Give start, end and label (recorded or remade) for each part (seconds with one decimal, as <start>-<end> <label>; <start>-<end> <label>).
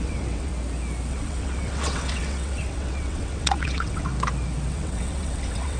0.0-0.5 remade; 0.5-1.1 recorded; 1.1-4.1 remade; 4.1-4.7 recorded; 4.7-5.8 remade